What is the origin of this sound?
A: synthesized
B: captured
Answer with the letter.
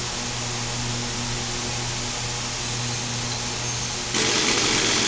B